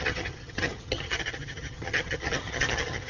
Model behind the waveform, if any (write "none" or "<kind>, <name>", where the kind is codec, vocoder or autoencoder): vocoder, HiFi-GAN